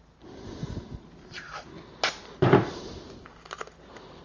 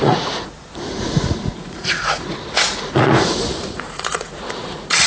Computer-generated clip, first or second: second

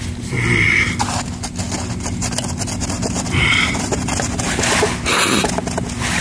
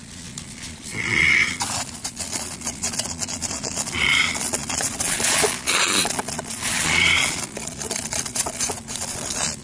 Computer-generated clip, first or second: second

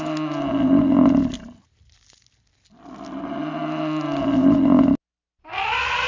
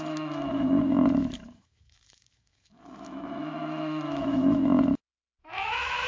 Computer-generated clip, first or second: second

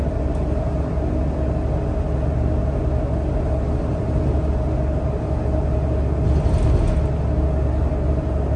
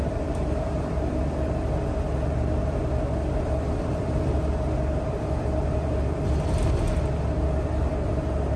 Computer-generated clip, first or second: second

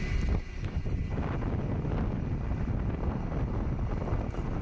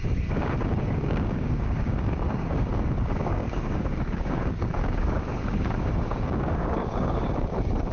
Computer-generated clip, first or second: second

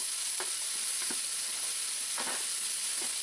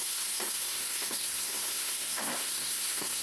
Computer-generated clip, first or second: second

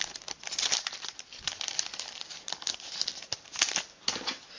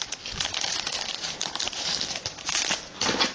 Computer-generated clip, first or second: second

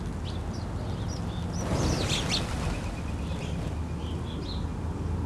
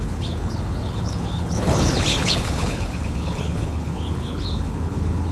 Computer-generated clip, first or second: second